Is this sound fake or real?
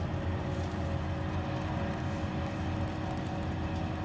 real